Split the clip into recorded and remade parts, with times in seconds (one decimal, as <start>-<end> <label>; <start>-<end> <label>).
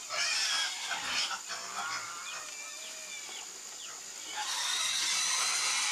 0.0-5.9 recorded